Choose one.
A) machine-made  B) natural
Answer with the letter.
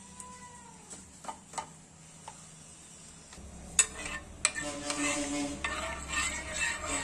B